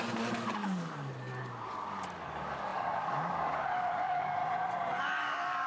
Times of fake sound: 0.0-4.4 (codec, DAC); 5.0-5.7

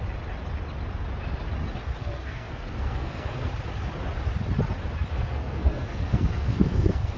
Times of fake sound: 2.0-3.5 (codec, SNAC); 5.1-7.2

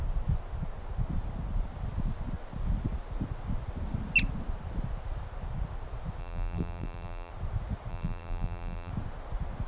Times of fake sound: 6.2-7.3 (vocoder, BigVGAN v2); 7.9-8.9

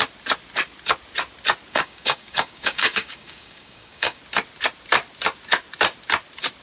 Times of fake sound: 1.7-4.2 (codec, DAC)

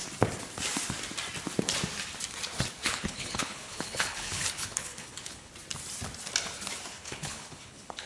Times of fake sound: 2.8-5.5 (codec, HILCodec); 6.9-8.1

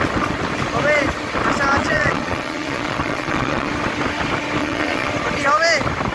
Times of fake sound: 1.8-3.7 (vocoder, Vocos); 4.6-5.1